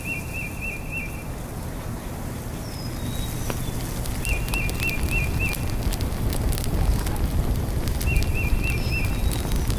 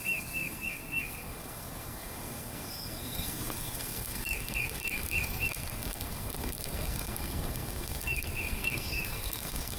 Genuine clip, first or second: first